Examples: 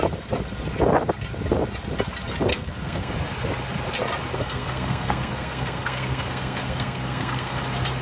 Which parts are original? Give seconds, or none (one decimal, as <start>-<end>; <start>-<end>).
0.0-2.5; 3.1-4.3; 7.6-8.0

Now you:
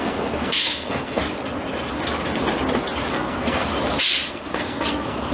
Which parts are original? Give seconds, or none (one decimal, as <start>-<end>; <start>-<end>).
1.2-3.1; 3.7-4.3

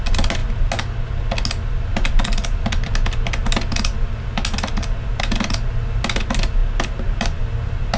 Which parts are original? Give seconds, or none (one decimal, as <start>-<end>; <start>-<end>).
0.0-8.0

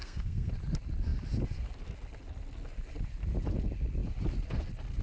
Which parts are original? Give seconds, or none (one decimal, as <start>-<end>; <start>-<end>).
0.5-5.0

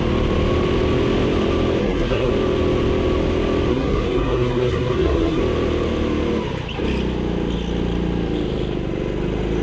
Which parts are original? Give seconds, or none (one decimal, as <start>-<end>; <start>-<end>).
0.0-1.8; 2.3-3.7; 5.4-9.6

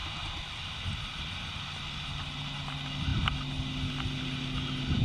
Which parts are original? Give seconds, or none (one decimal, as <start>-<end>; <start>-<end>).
0.0-5.0

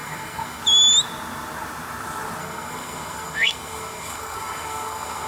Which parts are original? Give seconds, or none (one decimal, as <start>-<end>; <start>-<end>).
0.6-2.4